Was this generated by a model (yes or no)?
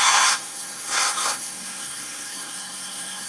yes